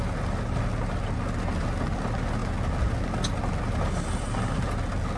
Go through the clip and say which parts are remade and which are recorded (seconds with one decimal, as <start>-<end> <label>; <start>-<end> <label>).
0.0-5.2 recorded